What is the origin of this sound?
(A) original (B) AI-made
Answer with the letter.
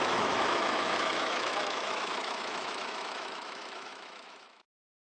B